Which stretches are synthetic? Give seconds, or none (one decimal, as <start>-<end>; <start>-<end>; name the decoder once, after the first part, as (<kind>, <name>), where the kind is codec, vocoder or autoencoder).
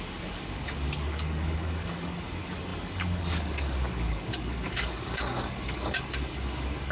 0.0-6.9 (codec, DAC)